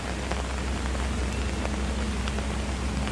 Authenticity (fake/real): real